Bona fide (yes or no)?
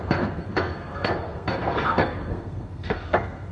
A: no